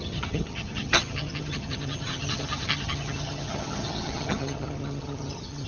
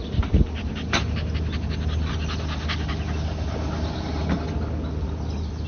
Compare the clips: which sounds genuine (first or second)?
second